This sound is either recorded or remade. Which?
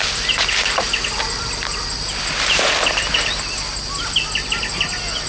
recorded